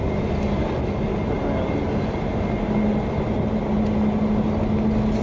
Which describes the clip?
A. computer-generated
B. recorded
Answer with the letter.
B